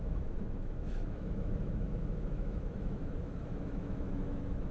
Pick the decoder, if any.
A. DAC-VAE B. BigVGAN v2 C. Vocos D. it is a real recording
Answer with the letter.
A